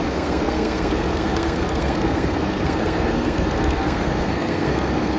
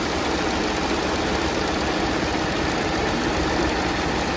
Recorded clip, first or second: second